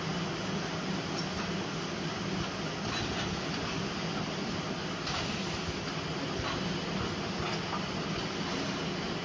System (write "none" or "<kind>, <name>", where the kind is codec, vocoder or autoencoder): none